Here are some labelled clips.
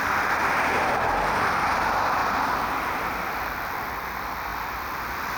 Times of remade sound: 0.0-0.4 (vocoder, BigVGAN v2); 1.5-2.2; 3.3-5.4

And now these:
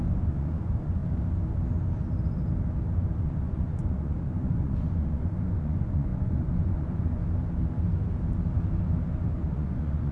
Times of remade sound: 0.0-1.0 (vocoder, Vocos); 3.2-7.2; 9.3-10.1

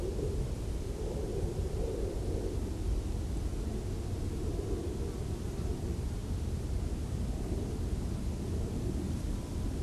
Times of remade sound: 0.0-2.9 (vocoder, BigVGAN v2); 4.4-6.2; 8.1-9.8

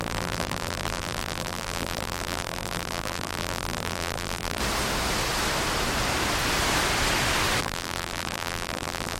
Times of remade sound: 0.0-4.6 (vocoder, BigVGAN v2); 7.6-9.2